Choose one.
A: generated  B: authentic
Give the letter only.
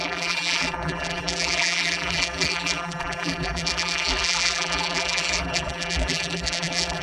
A